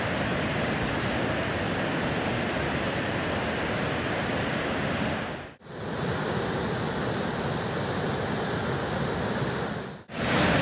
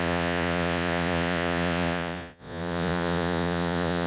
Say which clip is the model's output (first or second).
second